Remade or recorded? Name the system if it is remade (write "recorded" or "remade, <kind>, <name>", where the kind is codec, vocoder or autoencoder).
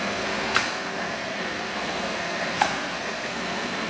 remade, codec, SNAC